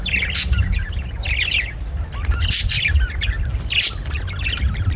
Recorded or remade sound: recorded